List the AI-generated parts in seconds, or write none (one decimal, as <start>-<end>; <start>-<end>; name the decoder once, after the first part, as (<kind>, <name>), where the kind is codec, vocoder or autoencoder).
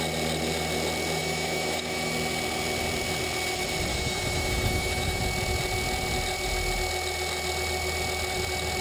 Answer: 1.2-2.1 (autoencoder, DAC-VAE); 3.9-5.2